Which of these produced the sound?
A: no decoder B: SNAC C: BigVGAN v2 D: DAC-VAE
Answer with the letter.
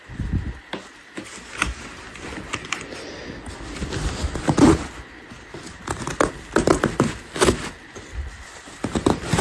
A